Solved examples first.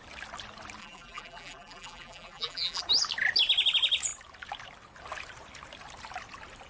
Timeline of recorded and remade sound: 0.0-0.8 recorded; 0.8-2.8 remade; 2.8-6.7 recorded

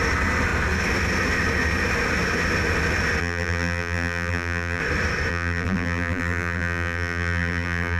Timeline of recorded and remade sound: 0.0-3.2 recorded; 3.2-4.8 remade; 4.8-5.3 recorded; 5.3-8.0 remade

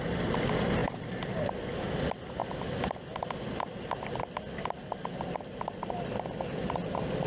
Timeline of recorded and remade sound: 0.0-0.8 recorded; 0.8-1.5 remade; 1.5-7.3 recorded

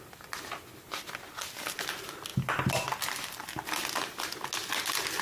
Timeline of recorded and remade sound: 0.0-5.2 recorded

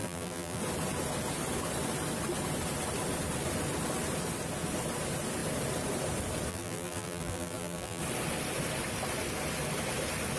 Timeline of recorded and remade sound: 0.0-0.6 remade; 0.6-6.5 recorded; 6.5-8.0 remade; 8.0-10.4 recorded

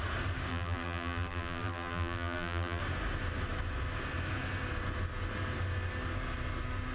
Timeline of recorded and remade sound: 0.0-0.5 recorded; 0.5-2.8 remade; 2.8-6.9 recorded